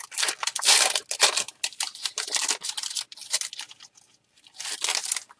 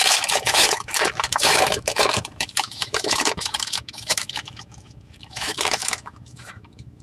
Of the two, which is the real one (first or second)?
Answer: first